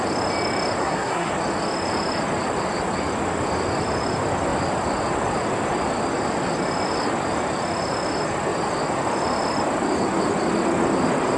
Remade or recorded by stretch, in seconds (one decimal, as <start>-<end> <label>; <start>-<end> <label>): 0.0-0.8 recorded; 0.8-1.3 remade; 1.3-11.4 recorded